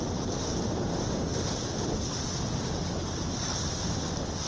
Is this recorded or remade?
recorded